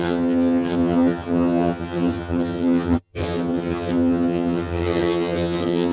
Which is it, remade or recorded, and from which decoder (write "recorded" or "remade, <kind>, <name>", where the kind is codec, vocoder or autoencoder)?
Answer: remade, vocoder, HiFi-GAN